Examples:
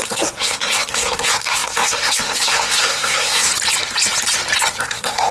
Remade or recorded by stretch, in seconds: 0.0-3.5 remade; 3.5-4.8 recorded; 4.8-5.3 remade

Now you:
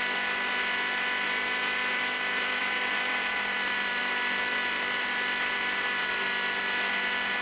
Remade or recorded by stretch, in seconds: 0.0-1.9 recorded; 1.9-4.0 remade; 4.0-7.4 recorded

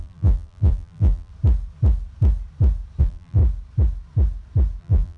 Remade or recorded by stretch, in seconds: 0.0-1.3 remade; 1.3-3.0 recorded; 3.0-3.4 remade; 3.4-4.8 recorded; 4.8-5.2 remade

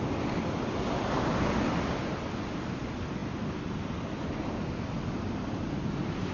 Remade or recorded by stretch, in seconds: 0.0-6.3 recorded

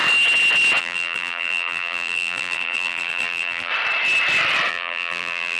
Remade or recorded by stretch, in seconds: 0.0-0.8 recorded; 0.8-3.7 remade; 3.7-4.7 recorded; 4.7-5.6 remade

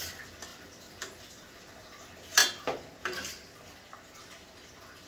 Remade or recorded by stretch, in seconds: 0.0-5.1 recorded

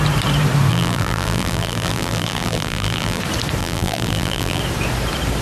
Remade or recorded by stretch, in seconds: 0.0-0.7 recorded; 0.7-3.2 remade; 3.2-3.6 recorded; 3.6-4.6 remade; 4.6-5.4 recorded